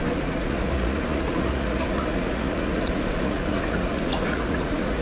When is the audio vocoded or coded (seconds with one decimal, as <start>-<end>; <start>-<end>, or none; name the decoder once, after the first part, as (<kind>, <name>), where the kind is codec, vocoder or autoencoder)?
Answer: 0.0-5.0 (vocoder, Vocos)